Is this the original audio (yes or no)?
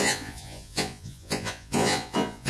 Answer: no